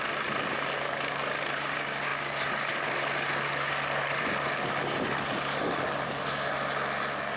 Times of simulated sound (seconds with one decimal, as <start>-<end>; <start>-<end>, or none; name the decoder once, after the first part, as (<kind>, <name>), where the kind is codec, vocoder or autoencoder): none